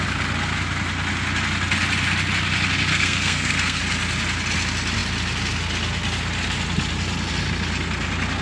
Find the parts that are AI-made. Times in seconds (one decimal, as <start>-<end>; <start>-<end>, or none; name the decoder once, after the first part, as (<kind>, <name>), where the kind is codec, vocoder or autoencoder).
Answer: 2.9-3.8 (codec, SNAC)